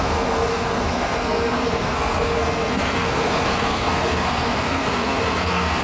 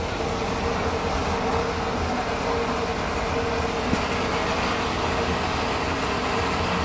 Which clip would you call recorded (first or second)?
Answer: second